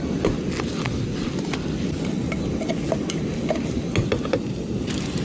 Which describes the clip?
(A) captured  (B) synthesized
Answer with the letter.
A